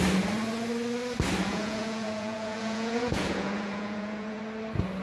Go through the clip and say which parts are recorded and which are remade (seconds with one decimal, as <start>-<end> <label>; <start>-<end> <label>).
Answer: 0.0-1.4 recorded; 1.4-4.4 remade; 4.4-5.0 recorded